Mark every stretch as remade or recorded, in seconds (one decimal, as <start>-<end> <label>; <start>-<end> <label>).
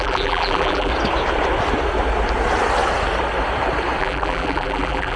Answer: 0.0-0.9 remade; 0.9-4.0 recorded; 4.0-5.2 remade